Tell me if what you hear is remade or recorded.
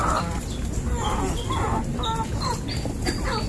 recorded